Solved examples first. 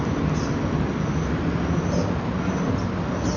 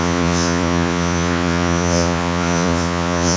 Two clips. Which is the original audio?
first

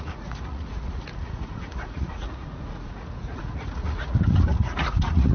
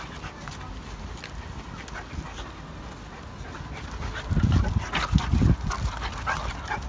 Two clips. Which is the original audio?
second